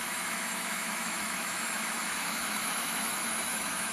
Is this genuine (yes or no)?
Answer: no